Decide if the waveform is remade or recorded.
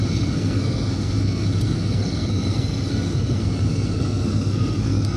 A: remade